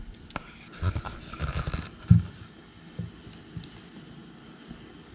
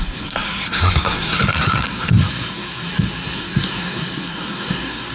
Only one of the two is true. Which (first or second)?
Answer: first